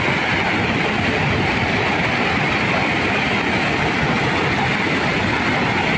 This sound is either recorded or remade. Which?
recorded